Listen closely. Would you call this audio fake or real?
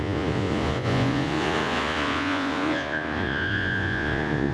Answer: fake